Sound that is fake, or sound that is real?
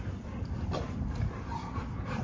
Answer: real